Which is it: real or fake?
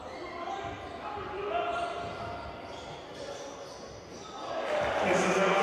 real